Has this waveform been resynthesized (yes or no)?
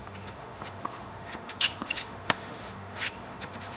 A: yes